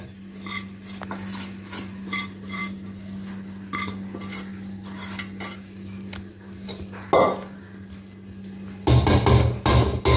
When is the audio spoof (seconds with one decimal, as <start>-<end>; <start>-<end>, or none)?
none